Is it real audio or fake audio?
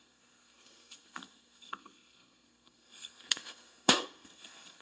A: fake